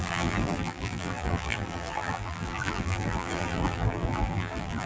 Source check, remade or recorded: remade